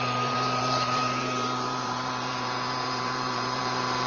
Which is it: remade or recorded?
remade